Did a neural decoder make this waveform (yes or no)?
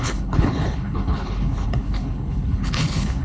yes